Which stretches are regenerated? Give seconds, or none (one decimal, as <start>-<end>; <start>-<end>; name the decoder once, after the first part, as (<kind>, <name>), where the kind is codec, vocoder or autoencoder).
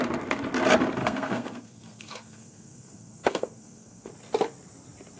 1.0-4.1 (codec, SNAC)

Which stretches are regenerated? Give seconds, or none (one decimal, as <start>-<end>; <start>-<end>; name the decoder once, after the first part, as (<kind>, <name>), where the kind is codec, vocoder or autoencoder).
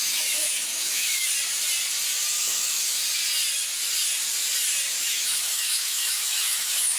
0.0-1.3 (autoencoder, DAC-VAE); 2.4-3.0; 4.9-7.0